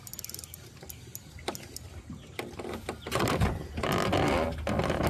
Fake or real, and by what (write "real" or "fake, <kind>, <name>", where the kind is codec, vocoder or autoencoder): real